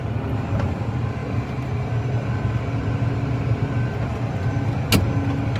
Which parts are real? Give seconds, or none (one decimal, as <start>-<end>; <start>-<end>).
0.0-5.6

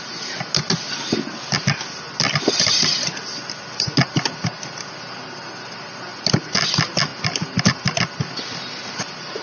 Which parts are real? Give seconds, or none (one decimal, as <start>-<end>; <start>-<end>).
0.0-9.4